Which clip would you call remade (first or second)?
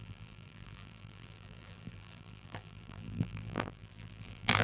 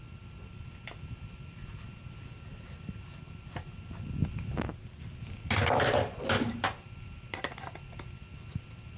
first